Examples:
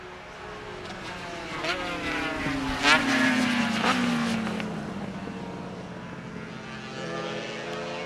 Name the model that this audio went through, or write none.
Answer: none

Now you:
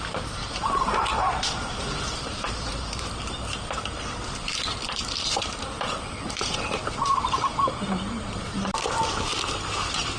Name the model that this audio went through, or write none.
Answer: vocoder, BigVGAN v2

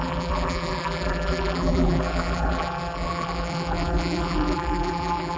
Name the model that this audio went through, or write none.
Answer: vocoder, BigVGAN v2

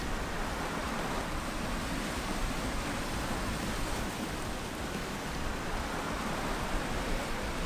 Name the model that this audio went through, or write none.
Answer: none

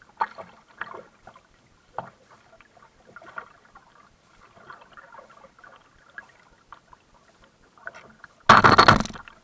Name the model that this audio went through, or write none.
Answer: none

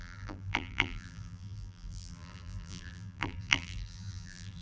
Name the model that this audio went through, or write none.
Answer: vocoder, BigVGAN v2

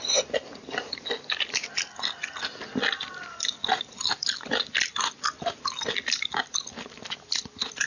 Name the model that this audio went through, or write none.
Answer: none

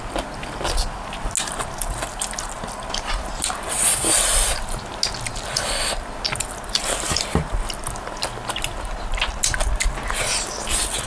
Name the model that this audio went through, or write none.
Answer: none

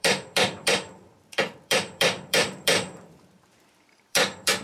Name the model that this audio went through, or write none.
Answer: vocoder, BigVGAN v2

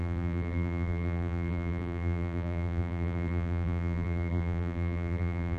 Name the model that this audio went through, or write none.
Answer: vocoder, BigVGAN v2